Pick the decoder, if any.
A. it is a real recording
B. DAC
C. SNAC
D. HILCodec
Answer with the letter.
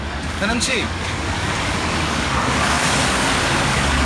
B